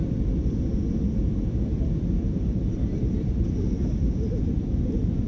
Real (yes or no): no